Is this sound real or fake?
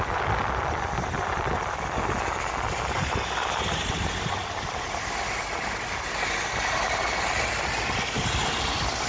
real